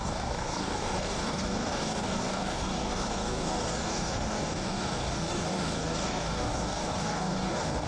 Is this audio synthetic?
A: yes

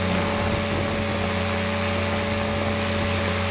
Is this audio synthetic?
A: no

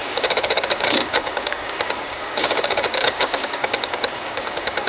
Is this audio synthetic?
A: yes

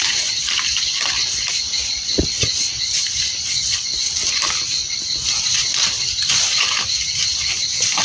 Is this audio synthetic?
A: no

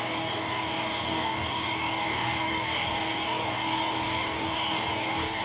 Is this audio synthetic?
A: yes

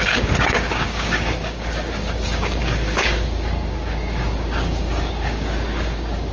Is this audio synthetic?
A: yes